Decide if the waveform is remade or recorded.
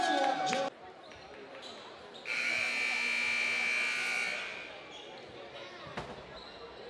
recorded